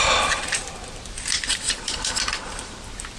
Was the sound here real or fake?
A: fake